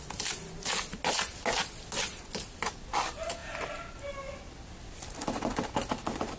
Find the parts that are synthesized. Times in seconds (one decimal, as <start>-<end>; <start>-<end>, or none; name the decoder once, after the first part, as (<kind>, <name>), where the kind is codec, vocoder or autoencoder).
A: none